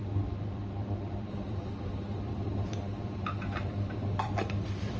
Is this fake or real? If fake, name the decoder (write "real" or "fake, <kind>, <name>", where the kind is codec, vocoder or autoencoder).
fake, vocoder, BigVGAN v2